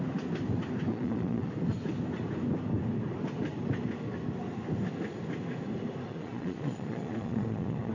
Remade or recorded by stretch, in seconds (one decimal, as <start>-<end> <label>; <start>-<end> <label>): 0.0-0.9 recorded; 0.9-1.5 remade; 1.5-6.1 recorded; 6.1-7.9 remade